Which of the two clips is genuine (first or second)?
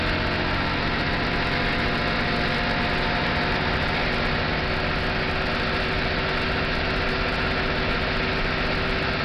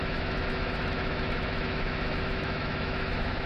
first